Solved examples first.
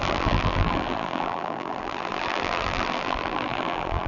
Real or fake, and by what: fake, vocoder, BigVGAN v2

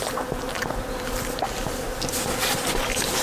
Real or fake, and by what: real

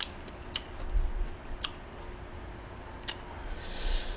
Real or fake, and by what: real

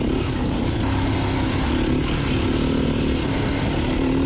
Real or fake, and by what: real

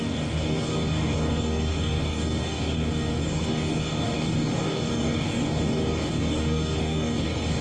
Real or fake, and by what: fake, codec, DAC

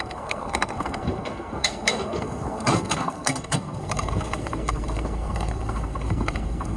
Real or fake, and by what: fake, codec, SNAC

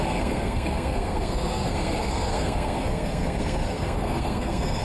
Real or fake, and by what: fake, codec, SNAC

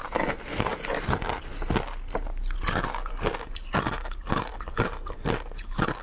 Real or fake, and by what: real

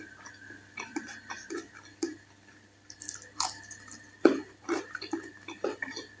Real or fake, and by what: real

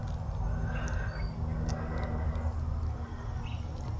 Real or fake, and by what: real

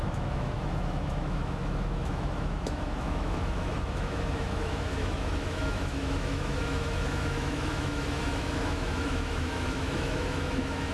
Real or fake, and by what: fake, autoencoder, DAC-VAE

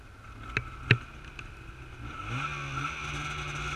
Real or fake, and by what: real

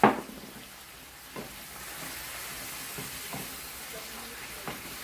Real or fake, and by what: real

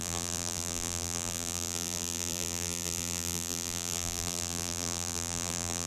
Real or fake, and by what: fake, vocoder, BigVGAN v2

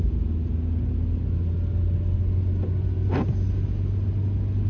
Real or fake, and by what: real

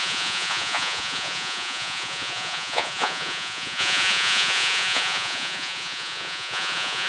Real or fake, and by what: fake, vocoder, Vocos